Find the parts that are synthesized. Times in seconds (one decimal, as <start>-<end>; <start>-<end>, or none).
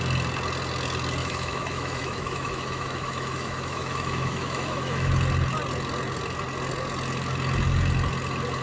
1.2-5.1